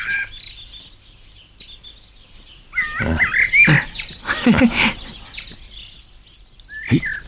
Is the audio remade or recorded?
recorded